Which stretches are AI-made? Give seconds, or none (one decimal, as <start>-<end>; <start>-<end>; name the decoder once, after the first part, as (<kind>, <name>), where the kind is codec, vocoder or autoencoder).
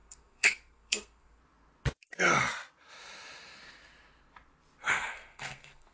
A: 0.0-1.4 (codec, SNAC); 4.9-5.9